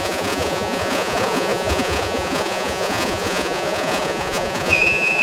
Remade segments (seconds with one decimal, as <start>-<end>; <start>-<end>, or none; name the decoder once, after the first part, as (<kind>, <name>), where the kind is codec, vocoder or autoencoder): 0.0-5.2 (vocoder, Vocos)